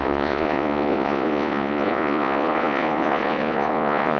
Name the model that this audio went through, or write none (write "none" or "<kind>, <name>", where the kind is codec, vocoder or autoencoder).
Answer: vocoder, Vocos